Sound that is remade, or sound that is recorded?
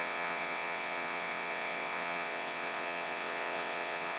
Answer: remade